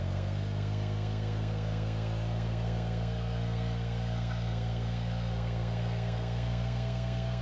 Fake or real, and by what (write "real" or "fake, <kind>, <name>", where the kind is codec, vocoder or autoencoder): fake, codec, SNAC